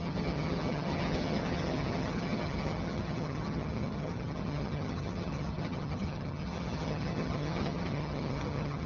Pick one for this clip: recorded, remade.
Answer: remade